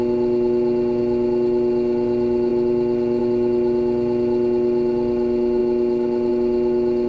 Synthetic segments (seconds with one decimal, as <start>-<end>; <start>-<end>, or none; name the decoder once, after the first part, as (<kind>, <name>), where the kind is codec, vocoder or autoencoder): none